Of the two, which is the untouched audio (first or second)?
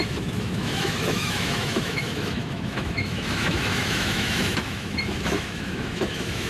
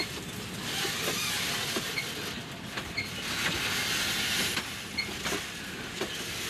second